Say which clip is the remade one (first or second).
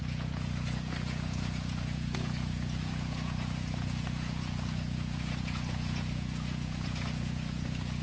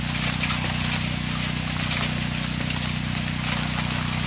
first